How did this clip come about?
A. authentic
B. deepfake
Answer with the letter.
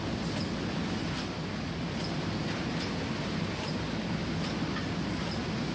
A